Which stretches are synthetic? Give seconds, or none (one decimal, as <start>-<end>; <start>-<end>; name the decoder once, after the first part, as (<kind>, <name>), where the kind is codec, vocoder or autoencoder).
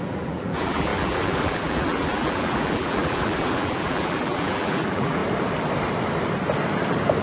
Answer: 0.0-5.2 (vocoder, BigVGAN v2)